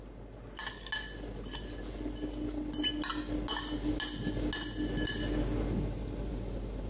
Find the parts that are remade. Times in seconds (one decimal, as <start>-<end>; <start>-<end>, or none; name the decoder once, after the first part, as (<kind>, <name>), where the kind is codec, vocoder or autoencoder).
none